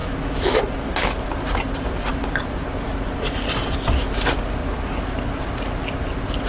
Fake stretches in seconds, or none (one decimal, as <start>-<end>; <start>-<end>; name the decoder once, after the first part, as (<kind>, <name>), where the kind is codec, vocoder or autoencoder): 0.0-0.6 (autoencoder, DAC-VAE)